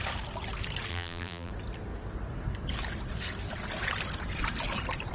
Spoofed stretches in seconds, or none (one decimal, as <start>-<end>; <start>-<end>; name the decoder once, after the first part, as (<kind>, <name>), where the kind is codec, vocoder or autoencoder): 0.9-1.5 (vocoder, BigVGAN v2)